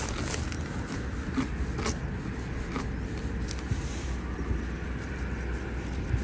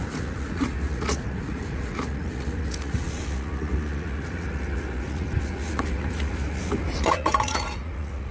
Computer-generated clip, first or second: second